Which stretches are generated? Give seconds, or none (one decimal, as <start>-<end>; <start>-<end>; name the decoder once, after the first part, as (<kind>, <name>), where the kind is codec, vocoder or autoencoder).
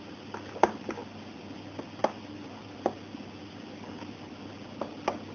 none